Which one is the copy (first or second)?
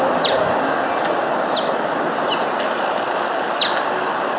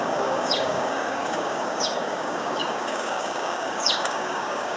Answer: second